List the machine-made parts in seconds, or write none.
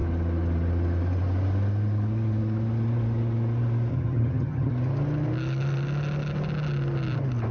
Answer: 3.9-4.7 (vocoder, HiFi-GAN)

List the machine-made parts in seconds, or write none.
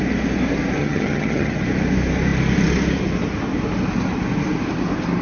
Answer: 0.8-1.6 (vocoder, HiFi-GAN)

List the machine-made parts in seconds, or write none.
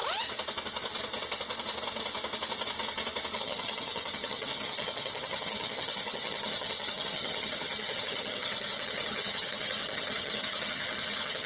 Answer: 3.4-11.5 (vocoder, HiFi-GAN)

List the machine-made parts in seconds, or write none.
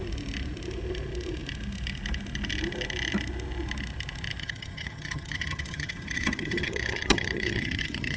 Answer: 4.4-8.2 (vocoder, HiFi-GAN)